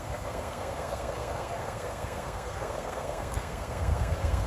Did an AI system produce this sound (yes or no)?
yes